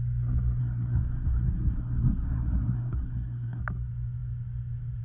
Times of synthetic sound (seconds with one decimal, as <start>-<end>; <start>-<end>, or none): 0.6-3.6